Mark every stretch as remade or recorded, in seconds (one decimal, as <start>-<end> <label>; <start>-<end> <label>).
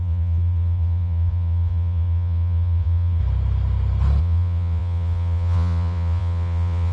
0.0-3.2 remade; 3.2-4.2 recorded; 4.2-6.9 remade